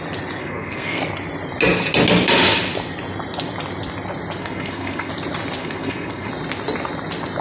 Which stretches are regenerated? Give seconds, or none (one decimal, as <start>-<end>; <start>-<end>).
0.4-1.0; 4.4-5.1; 5.6-6.3